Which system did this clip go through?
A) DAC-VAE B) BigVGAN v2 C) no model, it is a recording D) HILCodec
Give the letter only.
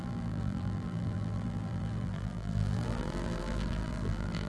B